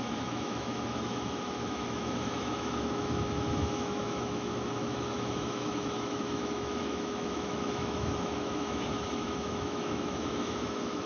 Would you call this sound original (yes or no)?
no